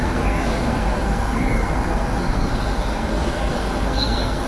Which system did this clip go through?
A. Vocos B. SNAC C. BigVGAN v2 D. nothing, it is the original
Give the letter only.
B